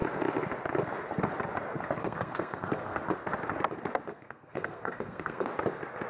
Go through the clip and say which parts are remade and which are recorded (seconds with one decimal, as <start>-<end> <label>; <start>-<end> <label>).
0.0-2.0 recorded; 2.0-3.0 remade; 3.0-4.1 recorded; 4.1-5.5 remade; 5.5-6.1 recorded